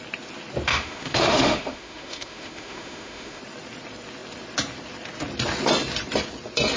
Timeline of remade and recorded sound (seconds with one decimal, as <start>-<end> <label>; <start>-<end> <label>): 0.0-0.7 recorded; 0.7-3.4 remade; 3.4-6.8 recorded